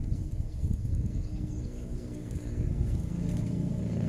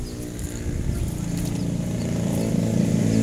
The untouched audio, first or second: second